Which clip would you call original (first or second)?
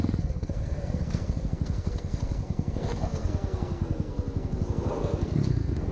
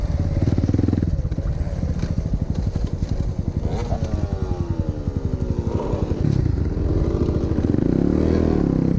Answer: second